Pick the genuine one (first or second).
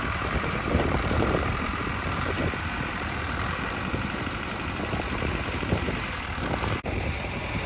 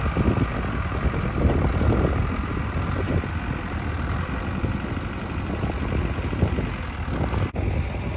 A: second